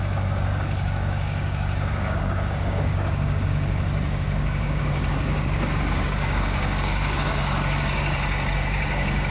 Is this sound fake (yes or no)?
yes